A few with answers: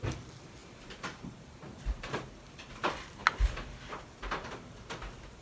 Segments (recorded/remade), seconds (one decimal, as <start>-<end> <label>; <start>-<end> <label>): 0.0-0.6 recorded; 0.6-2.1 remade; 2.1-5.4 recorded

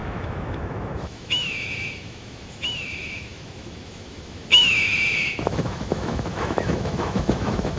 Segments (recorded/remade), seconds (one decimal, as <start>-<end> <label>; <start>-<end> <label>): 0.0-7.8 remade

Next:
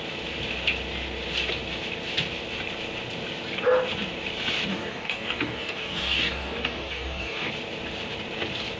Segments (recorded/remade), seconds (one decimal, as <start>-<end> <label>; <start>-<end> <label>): 0.0-4.7 recorded; 4.7-7.5 remade; 7.5-8.8 recorded

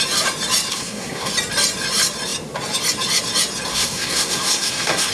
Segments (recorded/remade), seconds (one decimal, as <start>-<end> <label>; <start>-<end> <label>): 0.0-0.7 recorded; 0.7-1.3 remade; 1.3-3.7 recorded; 3.7-5.1 remade

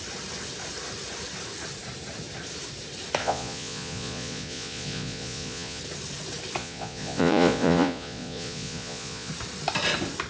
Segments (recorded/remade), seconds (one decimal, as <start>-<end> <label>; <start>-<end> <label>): 0.0-3.2 recorded; 3.2-5.8 remade; 5.8-6.6 recorded; 6.6-9.3 remade; 9.3-10.3 recorded

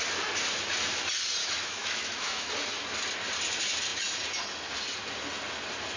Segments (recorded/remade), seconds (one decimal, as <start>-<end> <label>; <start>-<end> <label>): 0.0-1.4 recorded; 1.4-2.5 remade; 2.5-6.0 recorded

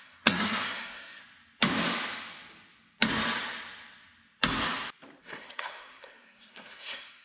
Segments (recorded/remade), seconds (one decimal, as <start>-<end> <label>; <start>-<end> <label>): 0.0-1.2 remade; 1.2-5.2 recorded; 5.2-7.2 remade

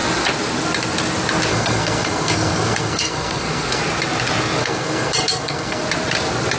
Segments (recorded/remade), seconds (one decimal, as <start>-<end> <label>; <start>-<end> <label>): 0.0-1.5 recorded; 1.5-3.8 remade; 3.8-4.6 recorded; 4.6-5.8 remade; 5.8-6.6 recorded